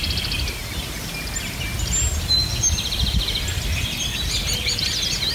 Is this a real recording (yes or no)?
yes